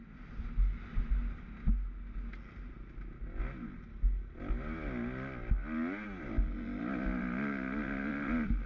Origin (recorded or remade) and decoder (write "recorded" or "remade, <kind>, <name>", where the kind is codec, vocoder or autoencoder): recorded